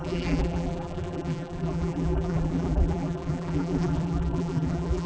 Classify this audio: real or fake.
fake